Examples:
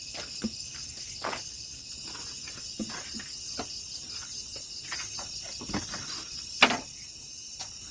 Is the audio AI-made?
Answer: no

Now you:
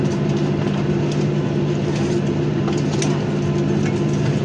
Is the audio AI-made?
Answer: no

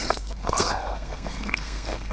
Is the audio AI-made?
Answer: yes